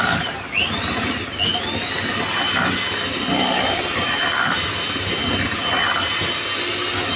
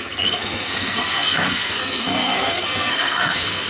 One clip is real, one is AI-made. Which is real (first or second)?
first